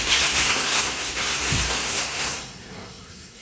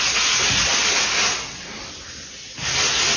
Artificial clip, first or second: first